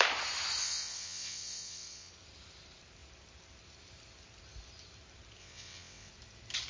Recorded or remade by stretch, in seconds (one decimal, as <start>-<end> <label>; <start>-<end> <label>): 0.0-0.6 recorded; 0.6-2.1 remade; 2.1-5.4 recorded; 5.4-6.1 remade; 6.1-6.7 recorded